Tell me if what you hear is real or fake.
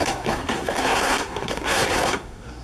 fake